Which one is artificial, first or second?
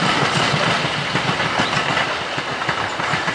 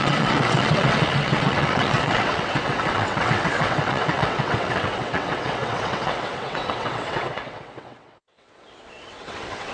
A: second